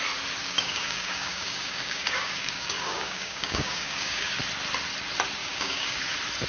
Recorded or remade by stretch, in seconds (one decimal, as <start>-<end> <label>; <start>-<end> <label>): 0.0-0.4 recorded; 0.4-4.3 remade; 4.3-5.4 recorded; 5.4-6.0 remade; 6.0-6.5 recorded